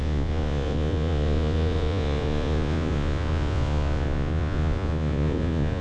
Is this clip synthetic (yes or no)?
yes